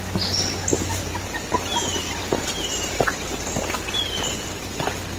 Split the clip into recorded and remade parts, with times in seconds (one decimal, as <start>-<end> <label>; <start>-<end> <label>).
0.0-0.7 recorded; 0.7-3.8 remade; 3.8-5.2 recorded